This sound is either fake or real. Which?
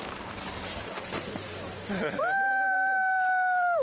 fake